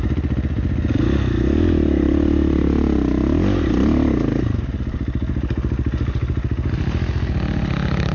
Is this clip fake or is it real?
real